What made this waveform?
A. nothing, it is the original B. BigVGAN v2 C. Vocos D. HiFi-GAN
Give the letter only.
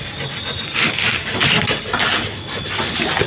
A